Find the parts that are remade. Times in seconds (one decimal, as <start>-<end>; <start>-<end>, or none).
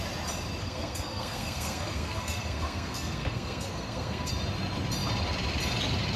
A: 0.6-4.3